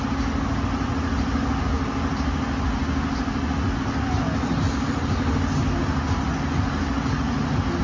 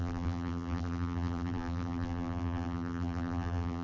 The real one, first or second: first